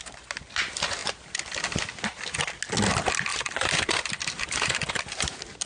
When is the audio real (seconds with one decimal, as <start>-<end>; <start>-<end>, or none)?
0.0-3.3; 5.3-5.7